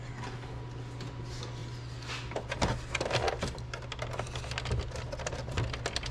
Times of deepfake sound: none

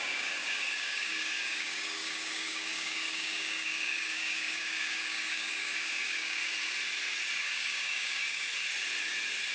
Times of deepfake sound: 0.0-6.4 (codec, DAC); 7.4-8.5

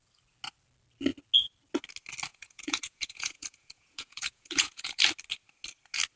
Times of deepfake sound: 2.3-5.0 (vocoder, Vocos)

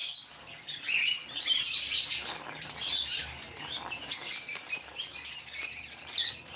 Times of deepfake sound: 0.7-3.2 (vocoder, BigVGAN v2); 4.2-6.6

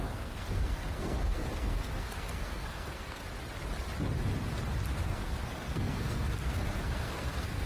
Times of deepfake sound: 0.0-3.2 (codec, SNAC); 4.9-7.7

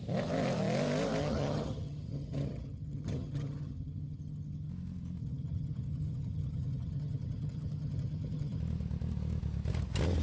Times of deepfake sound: 1.2-4.7 (vocoder, HiFi-GAN); 5.2-8.6

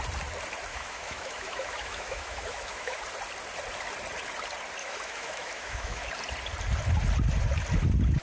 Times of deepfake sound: 0.7-3.0 (autoencoder, DAC-VAE); 4.8-6.1